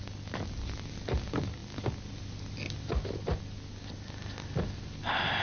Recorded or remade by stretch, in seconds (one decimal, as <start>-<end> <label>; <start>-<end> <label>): 0.0-5.4 recorded